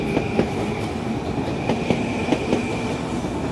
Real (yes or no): yes